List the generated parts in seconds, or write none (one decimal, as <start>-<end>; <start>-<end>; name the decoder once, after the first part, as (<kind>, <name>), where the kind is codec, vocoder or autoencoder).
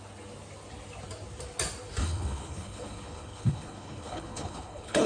2.0-5.1 (codec, HILCodec)